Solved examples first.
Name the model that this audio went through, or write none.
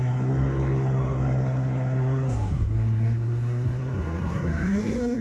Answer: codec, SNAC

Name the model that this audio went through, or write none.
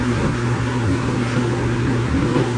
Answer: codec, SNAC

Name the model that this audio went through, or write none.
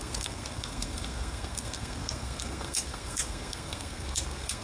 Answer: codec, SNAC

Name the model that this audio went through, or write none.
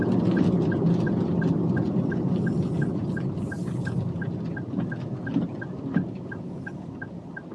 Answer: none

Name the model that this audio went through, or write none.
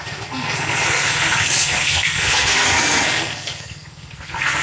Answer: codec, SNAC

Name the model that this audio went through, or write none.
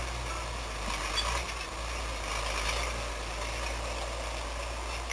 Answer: none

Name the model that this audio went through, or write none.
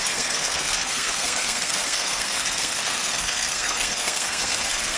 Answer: codec, SNAC